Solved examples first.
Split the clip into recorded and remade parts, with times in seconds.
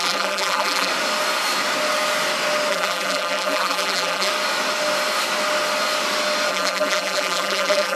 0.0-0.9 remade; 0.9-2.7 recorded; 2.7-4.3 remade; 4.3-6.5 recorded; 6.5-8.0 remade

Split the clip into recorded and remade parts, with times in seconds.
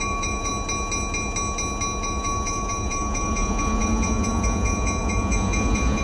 0.0-0.5 remade; 0.5-2.0 recorded; 2.0-6.0 remade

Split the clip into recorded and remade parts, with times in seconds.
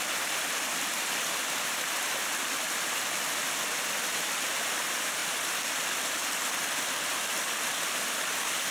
0.0-8.7 recorded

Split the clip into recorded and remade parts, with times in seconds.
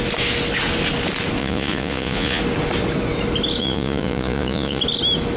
0.0-1.4 recorded; 1.4-2.4 remade; 2.4-3.6 recorded; 3.6-4.8 remade; 4.8-5.4 recorded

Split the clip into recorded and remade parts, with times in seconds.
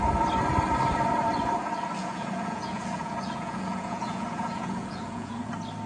0.0-2.0 recorded; 2.0-5.5 remade; 5.5-5.9 recorded